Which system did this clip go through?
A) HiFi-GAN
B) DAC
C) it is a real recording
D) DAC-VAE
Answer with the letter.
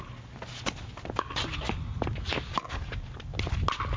C